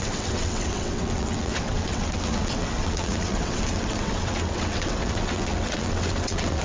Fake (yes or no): yes